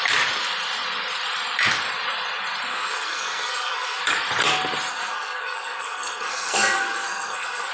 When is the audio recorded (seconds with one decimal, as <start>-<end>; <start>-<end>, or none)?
0.0-2.7; 4.0-4.9